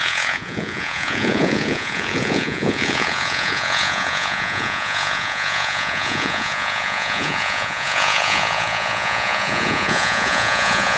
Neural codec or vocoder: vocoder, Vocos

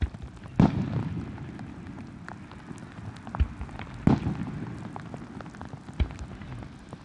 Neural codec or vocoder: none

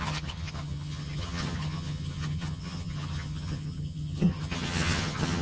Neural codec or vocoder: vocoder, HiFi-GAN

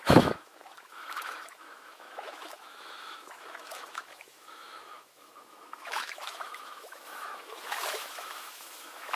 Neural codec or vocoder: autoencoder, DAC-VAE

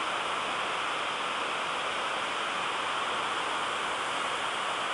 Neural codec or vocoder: none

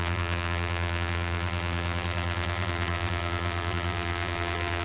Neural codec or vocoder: vocoder, BigVGAN v2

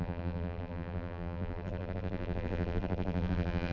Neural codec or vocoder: vocoder, BigVGAN v2